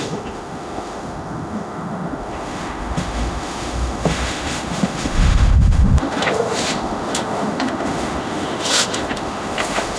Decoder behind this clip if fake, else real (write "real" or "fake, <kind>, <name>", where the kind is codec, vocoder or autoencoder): fake, autoencoder, DAC-VAE